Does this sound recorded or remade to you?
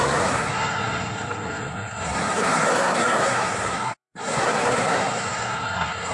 remade